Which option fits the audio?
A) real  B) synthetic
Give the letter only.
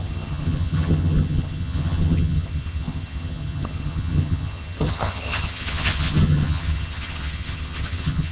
B